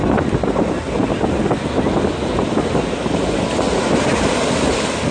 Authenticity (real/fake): real